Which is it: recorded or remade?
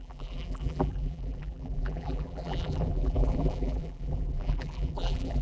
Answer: remade